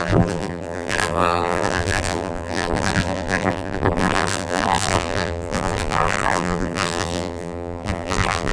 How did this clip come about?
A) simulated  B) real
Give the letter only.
A